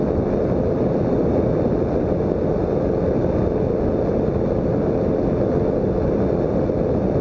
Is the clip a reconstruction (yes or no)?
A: no